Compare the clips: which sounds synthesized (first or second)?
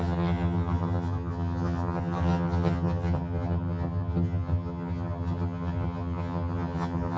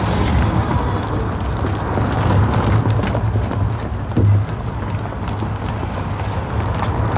first